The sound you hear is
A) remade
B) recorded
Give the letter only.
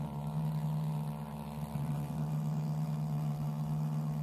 B